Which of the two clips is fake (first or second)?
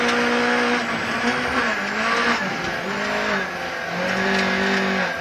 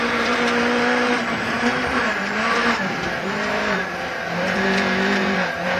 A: second